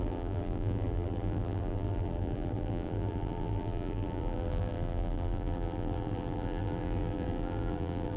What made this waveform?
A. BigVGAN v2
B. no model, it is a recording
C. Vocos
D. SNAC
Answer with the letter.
A